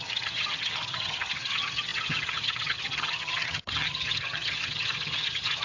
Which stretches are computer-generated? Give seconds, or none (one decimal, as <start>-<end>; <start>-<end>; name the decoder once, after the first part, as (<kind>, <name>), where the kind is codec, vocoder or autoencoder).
0.0-5.6 (vocoder, HiFi-GAN)